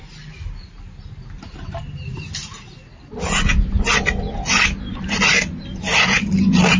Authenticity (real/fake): real